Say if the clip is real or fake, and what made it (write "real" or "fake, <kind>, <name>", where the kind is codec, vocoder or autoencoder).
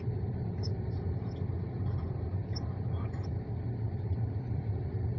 fake, vocoder, BigVGAN v2